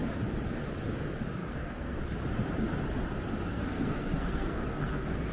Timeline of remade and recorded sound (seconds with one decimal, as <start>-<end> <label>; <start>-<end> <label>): 0.0-1.4 recorded; 1.4-2.0 remade; 2.0-3.5 recorded; 3.5-5.3 remade